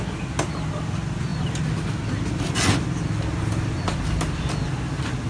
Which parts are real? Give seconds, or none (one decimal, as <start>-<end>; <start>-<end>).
0.0-5.3